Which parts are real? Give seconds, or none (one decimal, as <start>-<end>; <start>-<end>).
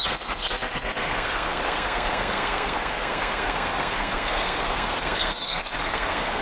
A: none